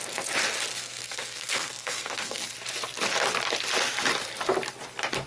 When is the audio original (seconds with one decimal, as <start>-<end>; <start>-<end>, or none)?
0.0-0.7; 2.4-5.3